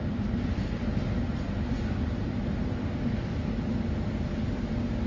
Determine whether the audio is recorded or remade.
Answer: recorded